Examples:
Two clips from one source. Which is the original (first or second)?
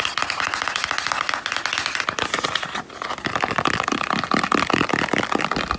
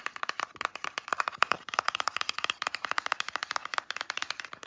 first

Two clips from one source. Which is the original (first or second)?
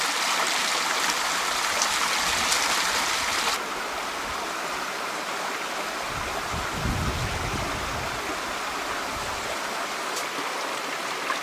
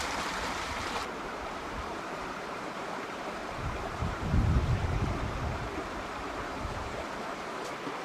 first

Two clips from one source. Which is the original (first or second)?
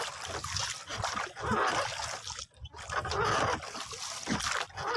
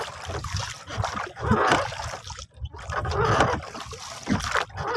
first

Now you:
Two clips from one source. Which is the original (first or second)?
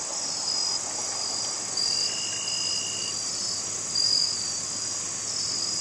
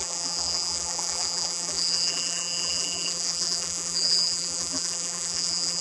first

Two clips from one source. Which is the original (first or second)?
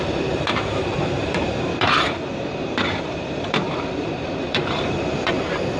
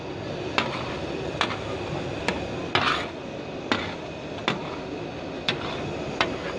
second